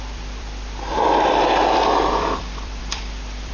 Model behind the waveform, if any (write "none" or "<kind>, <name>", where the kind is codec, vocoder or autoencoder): vocoder, BigVGAN v2